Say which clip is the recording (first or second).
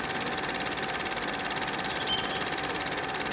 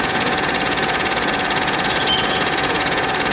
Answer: first